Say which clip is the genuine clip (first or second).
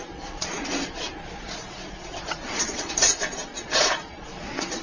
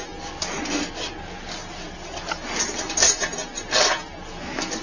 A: second